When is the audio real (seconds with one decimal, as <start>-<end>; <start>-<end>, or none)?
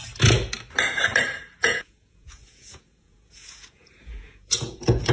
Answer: 0.0-1.6